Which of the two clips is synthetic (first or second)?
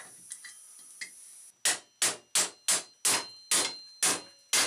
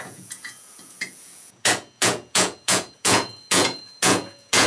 second